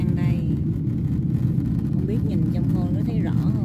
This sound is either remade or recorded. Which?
recorded